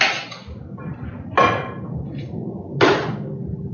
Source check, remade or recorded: recorded